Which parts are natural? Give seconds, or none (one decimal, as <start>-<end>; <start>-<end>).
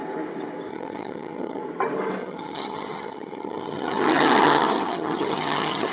0.0-0.7; 1.6-2.2